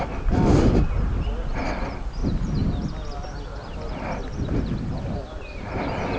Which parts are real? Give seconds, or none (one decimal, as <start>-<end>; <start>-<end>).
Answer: 0.0-6.2